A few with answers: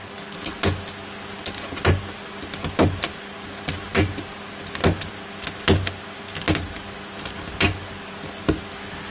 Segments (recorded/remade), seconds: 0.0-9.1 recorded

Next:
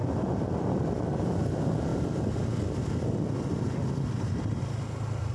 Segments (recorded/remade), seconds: 0.0-5.3 recorded

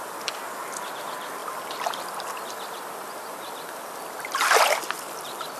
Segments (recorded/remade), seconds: 0.0-5.6 recorded